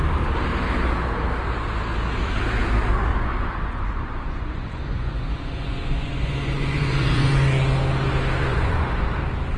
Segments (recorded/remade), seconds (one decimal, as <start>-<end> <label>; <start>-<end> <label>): 0.0-3.1 recorded; 3.1-7.3 remade; 7.3-8.5 recorded; 8.5-9.0 remade; 9.0-9.6 recorded